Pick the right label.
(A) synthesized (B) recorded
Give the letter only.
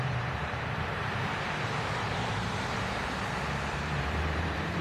A